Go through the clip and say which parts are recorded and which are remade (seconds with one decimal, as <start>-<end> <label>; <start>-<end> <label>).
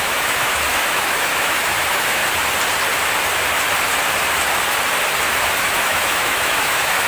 0.0-2.2 remade; 2.2-5.6 recorded; 5.6-7.1 remade